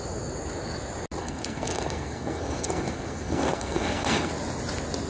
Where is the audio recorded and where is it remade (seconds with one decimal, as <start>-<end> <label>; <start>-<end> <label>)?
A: 0.0-1.2 recorded; 1.2-4.3 remade; 4.3-5.1 recorded